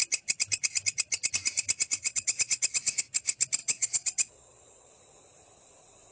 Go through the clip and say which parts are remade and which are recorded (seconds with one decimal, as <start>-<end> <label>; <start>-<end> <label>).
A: 0.0-2.0 recorded; 2.0-3.0 remade; 3.0-3.6 recorded; 3.6-4.9 remade; 4.9-6.1 recorded